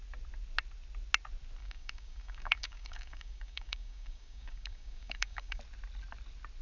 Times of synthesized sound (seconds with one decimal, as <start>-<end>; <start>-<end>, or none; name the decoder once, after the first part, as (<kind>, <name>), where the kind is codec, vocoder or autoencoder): 1.6-5.6 (codec, DAC)